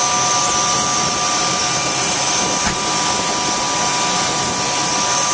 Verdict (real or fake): real